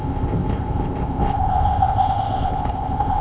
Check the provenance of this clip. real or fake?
fake